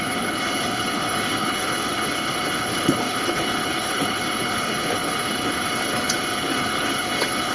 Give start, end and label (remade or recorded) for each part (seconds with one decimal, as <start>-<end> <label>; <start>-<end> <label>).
0.0-7.5 remade

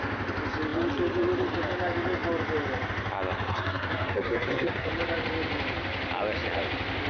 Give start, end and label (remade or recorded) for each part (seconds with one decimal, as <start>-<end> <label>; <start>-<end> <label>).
0.0-3.5 recorded; 3.5-4.9 remade; 4.9-7.1 recorded

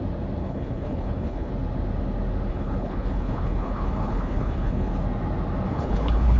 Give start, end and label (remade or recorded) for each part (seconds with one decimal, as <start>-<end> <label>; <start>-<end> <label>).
0.0-0.4 recorded; 0.4-1.5 remade; 1.5-2.5 recorded; 2.5-4.9 remade; 4.9-5.7 recorded; 5.7-6.4 remade

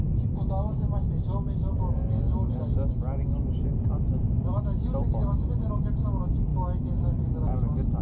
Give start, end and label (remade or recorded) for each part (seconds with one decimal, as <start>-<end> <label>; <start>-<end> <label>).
0.0-8.0 recorded

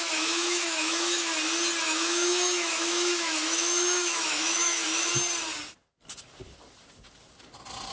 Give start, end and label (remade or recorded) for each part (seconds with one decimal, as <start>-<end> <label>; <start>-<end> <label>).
0.0-1.3 remade; 1.3-1.8 recorded; 1.8-5.1 remade; 5.1-7.9 recorded

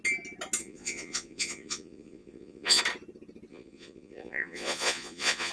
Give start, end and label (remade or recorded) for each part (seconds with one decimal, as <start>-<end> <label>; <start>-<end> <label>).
0.0-0.6 recorded; 0.6-2.8 remade; 2.8-3.5 recorded; 3.5-5.5 remade

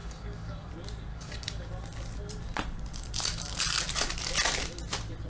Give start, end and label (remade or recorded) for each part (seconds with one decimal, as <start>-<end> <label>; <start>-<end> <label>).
0.0-0.7 remade; 0.7-1.1 recorded; 1.1-1.7 remade; 1.7-5.3 recorded